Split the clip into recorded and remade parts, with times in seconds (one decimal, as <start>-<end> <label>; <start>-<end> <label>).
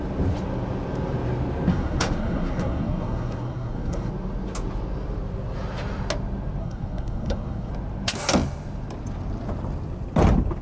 0.0-1.7 recorded; 1.7-4.1 remade; 4.1-6.6 recorded; 6.6-7.7 remade; 7.7-10.6 recorded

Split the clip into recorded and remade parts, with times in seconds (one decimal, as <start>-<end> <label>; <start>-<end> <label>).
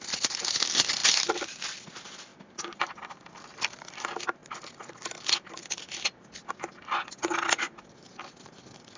0.0-2.3 recorded; 2.3-2.9 remade; 2.9-9.0 recorded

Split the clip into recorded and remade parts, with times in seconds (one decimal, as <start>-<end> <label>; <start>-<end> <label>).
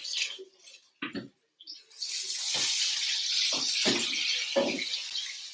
0.0-5.5 recorded